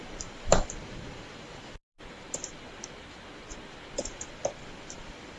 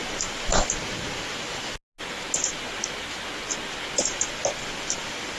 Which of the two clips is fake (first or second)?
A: first